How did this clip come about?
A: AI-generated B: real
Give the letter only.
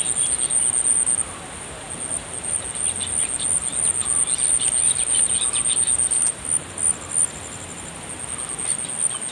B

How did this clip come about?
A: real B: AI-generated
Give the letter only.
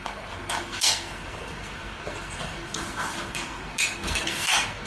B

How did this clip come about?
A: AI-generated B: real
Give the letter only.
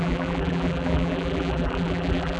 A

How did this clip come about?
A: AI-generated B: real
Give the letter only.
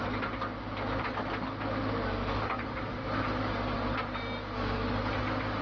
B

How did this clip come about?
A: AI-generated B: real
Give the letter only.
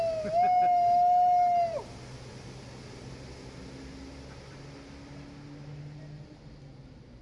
B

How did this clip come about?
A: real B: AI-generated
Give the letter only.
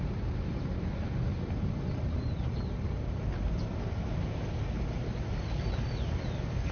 A